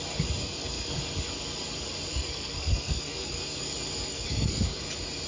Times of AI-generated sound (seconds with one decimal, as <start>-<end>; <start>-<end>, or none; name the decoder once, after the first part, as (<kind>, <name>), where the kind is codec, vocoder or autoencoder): 0.4-1.0 (codec, SNAC); 2.1-3.6; 4.1-4.8